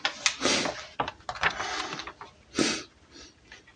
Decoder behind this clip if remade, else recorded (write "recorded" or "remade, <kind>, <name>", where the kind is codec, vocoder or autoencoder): recorded